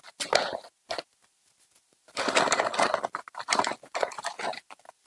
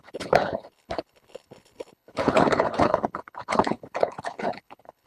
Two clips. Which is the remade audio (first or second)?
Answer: second